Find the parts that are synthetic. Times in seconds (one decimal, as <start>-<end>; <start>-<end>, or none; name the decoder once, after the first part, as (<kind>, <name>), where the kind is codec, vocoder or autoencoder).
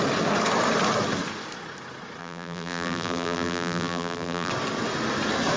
2.2-4.5 (vocoder, BigVGAN v2)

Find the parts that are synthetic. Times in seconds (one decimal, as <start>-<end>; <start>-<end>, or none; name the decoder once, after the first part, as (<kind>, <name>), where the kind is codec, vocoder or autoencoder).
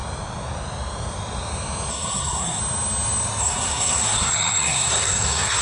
1.9-2.6 (codec, SNAC); 3.4-5.6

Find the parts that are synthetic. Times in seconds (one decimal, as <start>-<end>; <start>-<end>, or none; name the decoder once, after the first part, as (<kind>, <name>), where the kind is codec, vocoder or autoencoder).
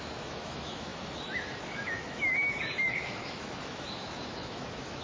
0.0-5.0 (autoencoder, DAC-VAE)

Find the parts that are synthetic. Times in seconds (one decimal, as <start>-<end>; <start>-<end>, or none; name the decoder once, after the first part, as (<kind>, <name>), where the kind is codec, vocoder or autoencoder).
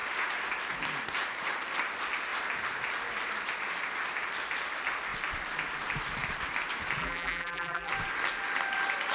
7.0-7.9 (vocoder, BigVGAN v2)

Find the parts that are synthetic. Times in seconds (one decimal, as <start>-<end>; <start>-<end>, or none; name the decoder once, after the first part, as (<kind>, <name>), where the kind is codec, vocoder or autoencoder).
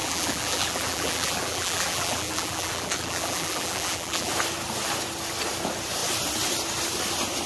0.0-4.3 (vocoder, BigVGAN v2)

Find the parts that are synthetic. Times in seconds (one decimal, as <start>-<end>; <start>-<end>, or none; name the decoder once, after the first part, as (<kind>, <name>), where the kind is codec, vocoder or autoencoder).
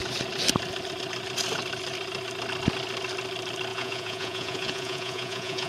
3.7-5.7 (vocoder, Vocos)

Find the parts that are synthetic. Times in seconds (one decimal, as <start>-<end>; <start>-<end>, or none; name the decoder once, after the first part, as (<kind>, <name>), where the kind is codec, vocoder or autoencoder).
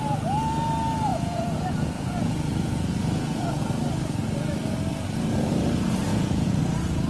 1.1-3.6 (vocoder, Vocos); 6.1-6.6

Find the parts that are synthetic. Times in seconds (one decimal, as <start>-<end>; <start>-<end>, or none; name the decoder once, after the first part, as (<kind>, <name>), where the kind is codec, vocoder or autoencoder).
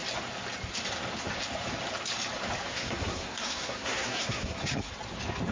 2.7-4.9 (codec, SNAC)